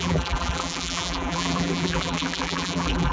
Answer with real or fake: fake